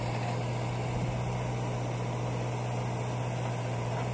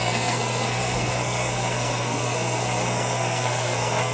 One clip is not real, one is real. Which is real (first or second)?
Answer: first